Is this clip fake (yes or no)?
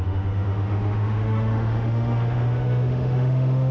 yes